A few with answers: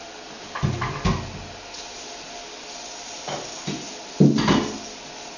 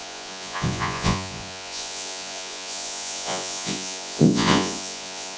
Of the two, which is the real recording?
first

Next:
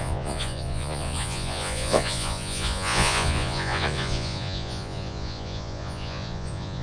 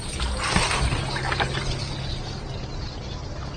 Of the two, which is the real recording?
second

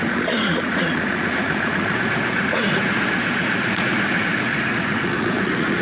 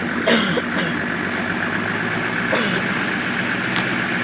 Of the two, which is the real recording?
second